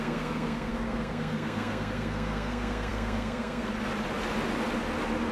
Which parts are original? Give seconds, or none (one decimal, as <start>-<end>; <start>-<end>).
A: 3.7-5.3

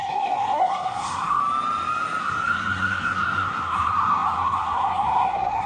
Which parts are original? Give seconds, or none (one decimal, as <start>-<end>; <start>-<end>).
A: 1.4-2.2

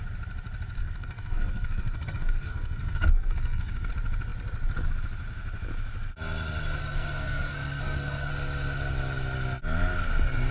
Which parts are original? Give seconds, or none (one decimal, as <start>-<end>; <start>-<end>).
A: 0.0-0.8; 3.9-6.8; 8.3-10.5

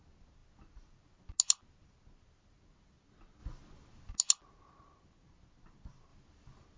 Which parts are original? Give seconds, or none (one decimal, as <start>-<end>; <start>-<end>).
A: 0.0-6.8

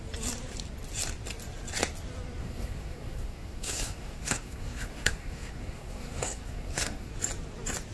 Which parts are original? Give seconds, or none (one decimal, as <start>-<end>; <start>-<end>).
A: 0.0-2.4; 7.1-7.9

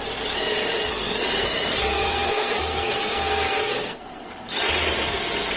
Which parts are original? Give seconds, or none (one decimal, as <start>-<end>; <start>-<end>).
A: 0.0-0.9; 4.3-5.6